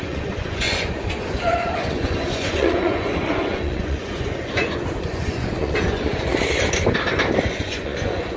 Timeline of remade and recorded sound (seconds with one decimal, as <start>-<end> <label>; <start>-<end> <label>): 0.0-6.3 remade; 6.3-7.5 recorded; 7.5-8.4 remade

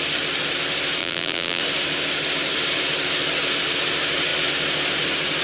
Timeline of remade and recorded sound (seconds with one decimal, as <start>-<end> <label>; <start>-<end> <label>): 0.0-1.0 recorded; 1.0-1.6 remade; 1.6-5.4 recorded

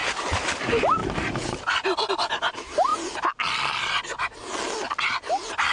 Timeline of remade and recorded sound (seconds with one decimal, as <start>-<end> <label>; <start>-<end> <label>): 0.0-5.7 recorded

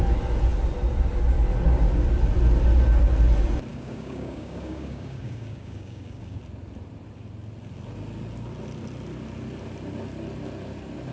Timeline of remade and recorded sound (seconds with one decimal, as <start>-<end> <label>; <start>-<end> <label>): 0.0-3.7 recorded; 3.7-6.4 remade; 6.4-11.1 recorded

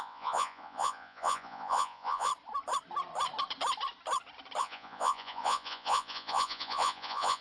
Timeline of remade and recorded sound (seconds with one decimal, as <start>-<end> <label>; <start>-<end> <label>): 0.0-2.3 remade; 2.3-4.6 recorded; 4.6-7.4 remade

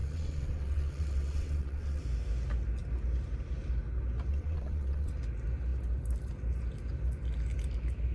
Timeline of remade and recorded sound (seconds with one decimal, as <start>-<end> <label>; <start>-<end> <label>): 0.0-2.0 remade; 2.0-4.3 recorded; 4.3-5.1 remade; 5.1-8.1 recorded

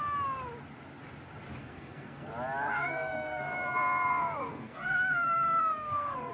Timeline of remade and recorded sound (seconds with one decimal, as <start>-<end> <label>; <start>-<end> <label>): 0.0-1.6 recorded; 1.6-2.3 remade; 2.3-2.7 recorded; 2.7-3.4 remade; 3.4-4.5 recorded; 4.5-6.3 remade

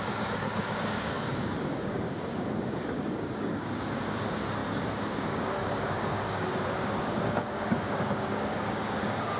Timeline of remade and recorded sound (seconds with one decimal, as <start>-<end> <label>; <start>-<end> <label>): 0.0-9.4 remade